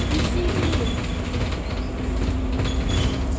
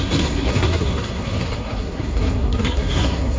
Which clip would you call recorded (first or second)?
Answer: first